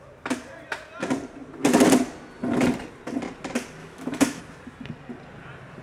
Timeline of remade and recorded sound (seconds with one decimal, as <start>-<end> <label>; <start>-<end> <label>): 0.0-3.8 recorded; 3.8-4.4 remade; 4.4-5.8 recorded